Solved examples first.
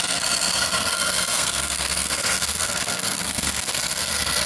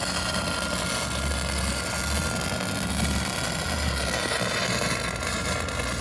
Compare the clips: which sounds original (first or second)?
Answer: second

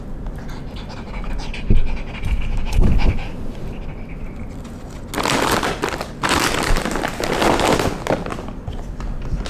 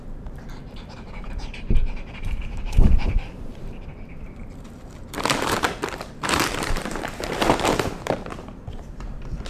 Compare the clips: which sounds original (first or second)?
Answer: first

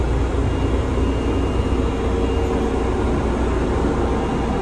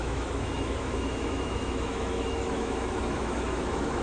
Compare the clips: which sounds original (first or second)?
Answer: first